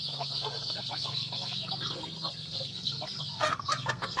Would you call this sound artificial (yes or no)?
yes